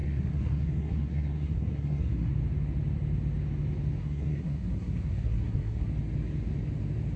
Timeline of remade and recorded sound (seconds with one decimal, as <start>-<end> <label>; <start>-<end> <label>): 0.0-2.3 remade; 2.3-4.0 recorded; 4.0-5.9 remade; 5.9-7.2 recorded